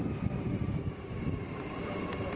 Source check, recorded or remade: recorded